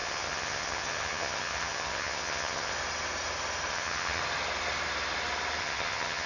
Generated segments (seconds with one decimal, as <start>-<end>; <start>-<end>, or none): 0.0-2.7; 3.7-4.2; 5.6-6.3